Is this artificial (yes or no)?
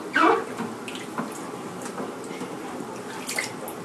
no